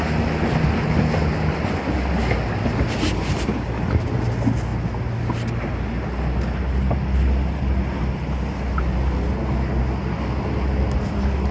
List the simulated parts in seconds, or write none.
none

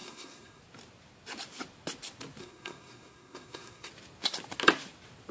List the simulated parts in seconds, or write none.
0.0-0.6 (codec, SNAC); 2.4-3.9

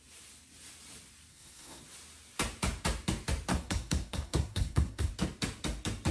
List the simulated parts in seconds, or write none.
1.3-1.8 (codec, SNAC); 3.5-5.1